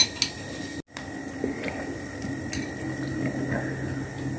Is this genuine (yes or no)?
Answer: yes